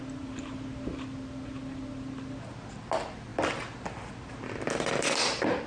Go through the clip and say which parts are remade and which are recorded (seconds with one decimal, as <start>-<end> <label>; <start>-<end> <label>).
0.0-5.7 recorded